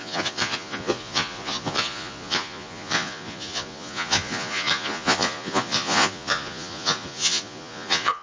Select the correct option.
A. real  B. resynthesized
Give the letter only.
B